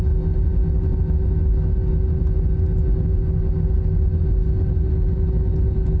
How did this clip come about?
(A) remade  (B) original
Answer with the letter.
B